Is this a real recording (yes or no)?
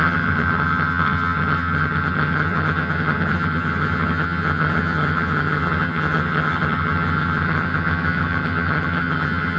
no